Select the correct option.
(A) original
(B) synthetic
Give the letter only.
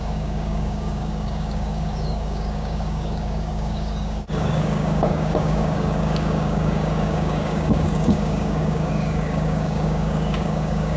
B